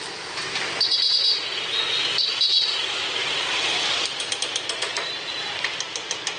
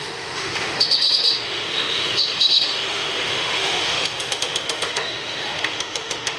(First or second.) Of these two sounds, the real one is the first